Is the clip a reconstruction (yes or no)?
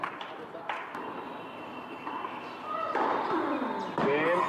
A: no